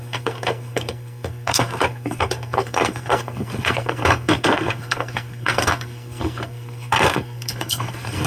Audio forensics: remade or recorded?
remade